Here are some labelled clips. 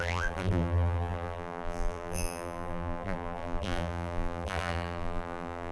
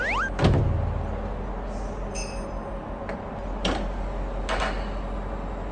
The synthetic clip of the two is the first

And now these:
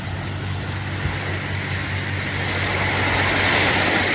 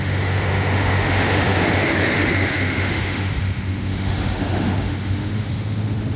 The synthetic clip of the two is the second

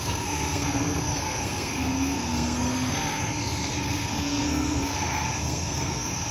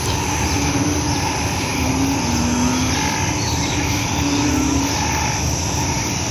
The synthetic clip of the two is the first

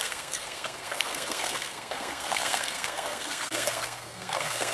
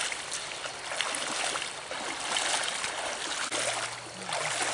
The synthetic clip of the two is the first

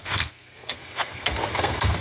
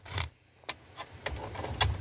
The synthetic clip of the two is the first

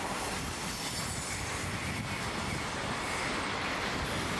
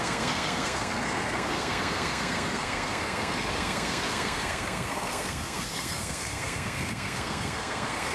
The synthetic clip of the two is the second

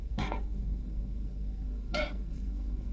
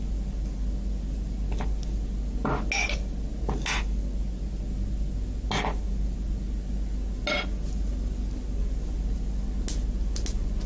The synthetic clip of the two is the first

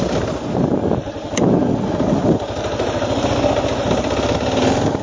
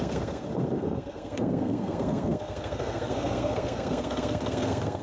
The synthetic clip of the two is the second